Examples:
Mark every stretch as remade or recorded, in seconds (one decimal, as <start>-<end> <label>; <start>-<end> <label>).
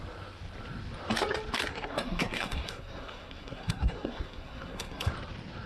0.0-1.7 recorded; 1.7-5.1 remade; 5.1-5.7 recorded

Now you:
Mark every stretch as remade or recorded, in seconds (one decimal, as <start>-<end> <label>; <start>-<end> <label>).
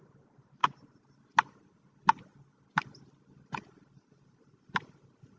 0.0-5.4 recorded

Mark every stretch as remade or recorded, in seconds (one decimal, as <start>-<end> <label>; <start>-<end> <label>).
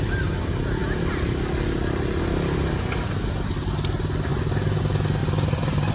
0.0-5.9 recorded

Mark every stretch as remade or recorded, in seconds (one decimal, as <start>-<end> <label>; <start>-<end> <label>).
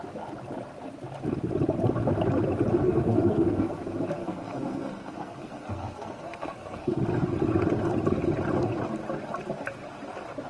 0.0-2.8 recorded; 2.8-3.8 remade; 3.8-4.2 recorded; 4.2-7.0 remade; 7.0-10.5 recorded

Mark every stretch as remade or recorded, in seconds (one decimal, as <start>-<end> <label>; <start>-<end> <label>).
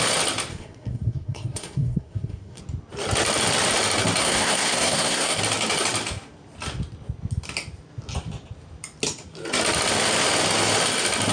0.0-0.5 recorded; 0.5-2.6 remade; 2.6-4.2 recorded; 4.2-5.4 remade; 5.4-11.3 recorded